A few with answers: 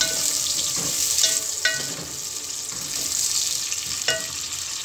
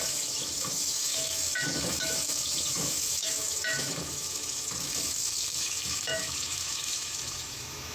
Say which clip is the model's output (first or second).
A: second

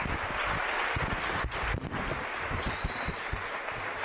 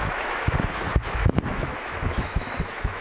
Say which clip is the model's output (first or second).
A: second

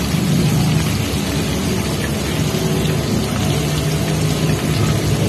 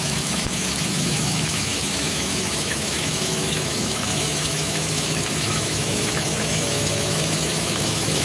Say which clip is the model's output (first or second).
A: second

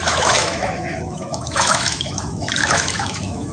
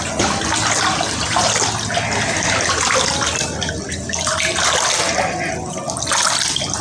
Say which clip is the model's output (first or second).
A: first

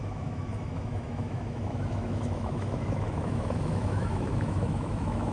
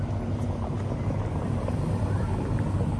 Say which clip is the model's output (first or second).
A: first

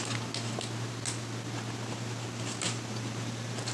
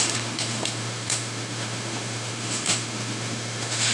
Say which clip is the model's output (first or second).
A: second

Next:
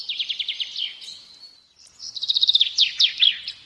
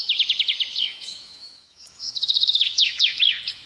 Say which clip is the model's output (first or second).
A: second